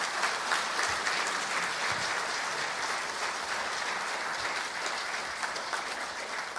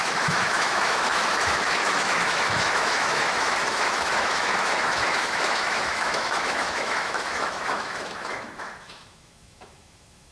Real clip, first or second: first